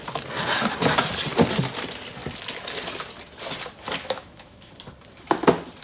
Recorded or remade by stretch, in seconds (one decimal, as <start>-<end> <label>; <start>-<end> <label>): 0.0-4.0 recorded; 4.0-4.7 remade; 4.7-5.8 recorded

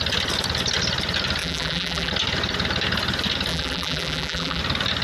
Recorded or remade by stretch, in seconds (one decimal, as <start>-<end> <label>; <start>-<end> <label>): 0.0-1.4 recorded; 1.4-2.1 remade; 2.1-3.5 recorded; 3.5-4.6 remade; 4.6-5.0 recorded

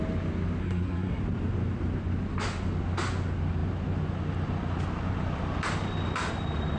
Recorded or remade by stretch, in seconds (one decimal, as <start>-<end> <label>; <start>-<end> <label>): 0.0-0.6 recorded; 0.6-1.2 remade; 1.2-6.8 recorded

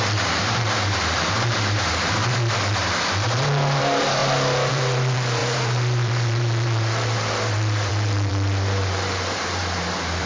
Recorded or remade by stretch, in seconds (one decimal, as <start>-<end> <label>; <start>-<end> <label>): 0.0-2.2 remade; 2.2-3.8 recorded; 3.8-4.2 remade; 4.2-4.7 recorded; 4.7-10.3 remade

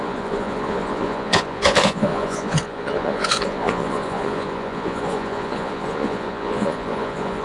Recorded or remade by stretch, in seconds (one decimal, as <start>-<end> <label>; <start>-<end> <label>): 0.0-7.4 remade

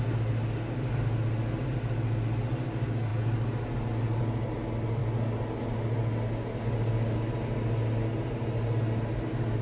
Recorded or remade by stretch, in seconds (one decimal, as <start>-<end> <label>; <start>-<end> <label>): 0.0-9.6 recorded

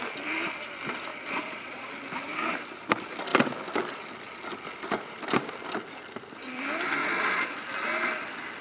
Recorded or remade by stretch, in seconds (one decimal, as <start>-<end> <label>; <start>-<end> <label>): 0.0-1.1 recorded; 1.1-1.9 remade; 1.9-7.0 recorded; 7.0-7.6 remade; 7.6-8.6 recorded